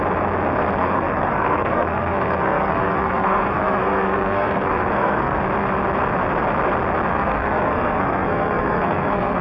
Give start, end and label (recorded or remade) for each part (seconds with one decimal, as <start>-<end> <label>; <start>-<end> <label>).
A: 0.0-0.8 recorded; 0.8-5.4 remade; 5.4-7.1 recorded; 7.1-9.4 remade